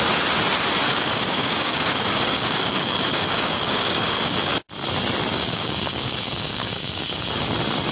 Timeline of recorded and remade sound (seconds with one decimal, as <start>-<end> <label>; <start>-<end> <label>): 0.0-0.9 recorded; 0.9-4.5 remade; 4.5-5.3 recorded; 5.3-7.5 remade; 7.5-7.9 recorded